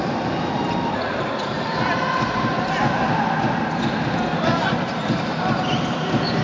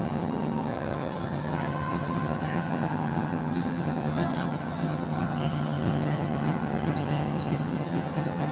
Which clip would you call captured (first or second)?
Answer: first